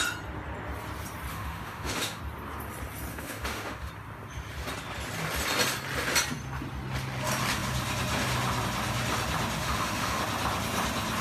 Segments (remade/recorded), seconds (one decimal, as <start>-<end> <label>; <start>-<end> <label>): 0.0-1.3 recorded; 1.3-2.2 remade; 2.2-3.1 recorded; 3.1-3.9 remade; 3.9-9.6 recorded; 9.6-10.2 remade; 10.2-11.2 recorded